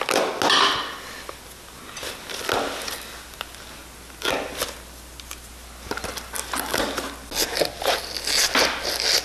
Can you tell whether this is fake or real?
real